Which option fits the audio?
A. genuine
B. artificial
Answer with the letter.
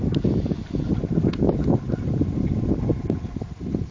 A